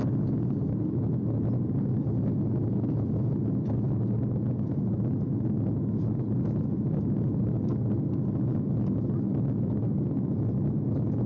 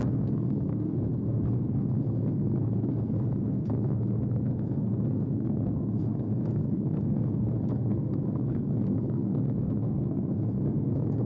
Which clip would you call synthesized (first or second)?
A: second